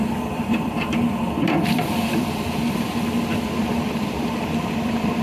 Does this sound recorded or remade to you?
remade